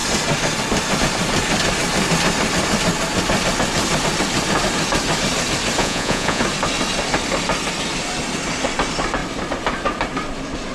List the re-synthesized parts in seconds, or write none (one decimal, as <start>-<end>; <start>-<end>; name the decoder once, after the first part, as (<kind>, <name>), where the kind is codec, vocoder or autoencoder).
5.8-6.4 (vocoder, Vocos)